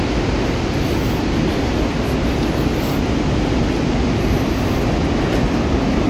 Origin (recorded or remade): recorded